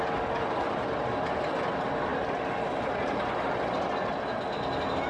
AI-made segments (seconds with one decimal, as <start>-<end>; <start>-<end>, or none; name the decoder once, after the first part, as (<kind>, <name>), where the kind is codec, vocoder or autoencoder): none